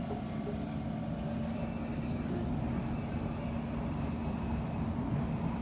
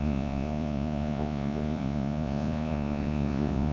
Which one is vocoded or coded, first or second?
second